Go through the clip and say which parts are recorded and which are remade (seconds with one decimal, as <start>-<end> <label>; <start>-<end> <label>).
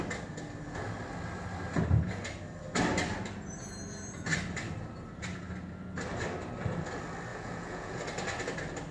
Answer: 0.0-7.3 recorded; 7.3-8.0 remade; 8.0-8.9 recorded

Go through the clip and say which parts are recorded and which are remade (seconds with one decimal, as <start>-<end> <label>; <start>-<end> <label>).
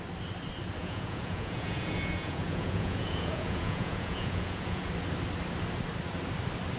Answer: 0.0-0.8 recorded; 0.8-4.9 remade; 4.9-6.8 recorded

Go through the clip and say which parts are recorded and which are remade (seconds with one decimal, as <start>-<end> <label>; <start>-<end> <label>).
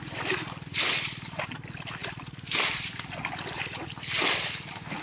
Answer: 0.0-5.0 recorded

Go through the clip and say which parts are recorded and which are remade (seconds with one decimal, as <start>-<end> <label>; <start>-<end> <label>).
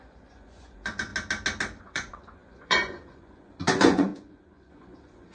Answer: 0.0-1.1 remade; 1.1-1.8 recorded; 1.8-5.3 remade